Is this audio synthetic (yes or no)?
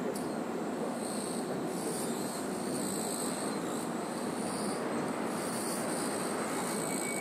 no